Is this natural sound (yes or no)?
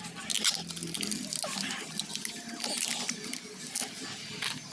yes